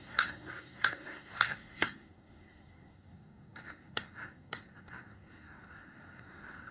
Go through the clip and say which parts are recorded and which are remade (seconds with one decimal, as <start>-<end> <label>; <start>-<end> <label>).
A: 0.0-6.7 remade